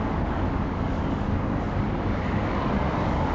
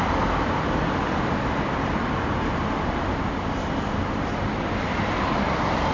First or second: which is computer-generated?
first